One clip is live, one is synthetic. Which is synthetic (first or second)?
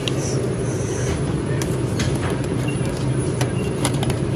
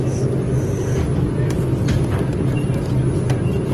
first